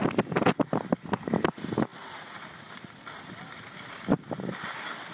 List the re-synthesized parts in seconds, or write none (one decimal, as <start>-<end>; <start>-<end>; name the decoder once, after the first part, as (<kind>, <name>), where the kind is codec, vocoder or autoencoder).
none